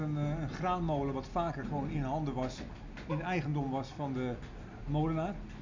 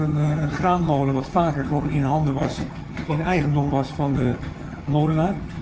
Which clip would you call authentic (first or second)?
first